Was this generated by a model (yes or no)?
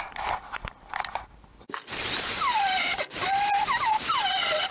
no